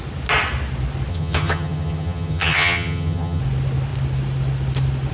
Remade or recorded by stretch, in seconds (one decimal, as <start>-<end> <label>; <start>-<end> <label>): 0.0-1.1 recorded; 1.1-3.4 remade; 3.4-5.1 recorded